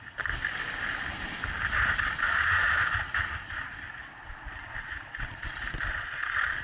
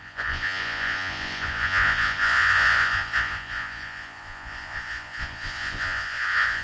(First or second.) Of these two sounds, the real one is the first